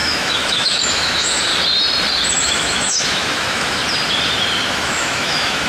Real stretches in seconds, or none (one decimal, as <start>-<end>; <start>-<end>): 1.5-2.3; 3.8-4.7